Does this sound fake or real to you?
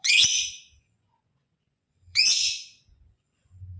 fake